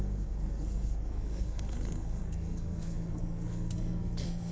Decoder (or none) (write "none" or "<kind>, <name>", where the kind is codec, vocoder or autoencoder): codec, SNAC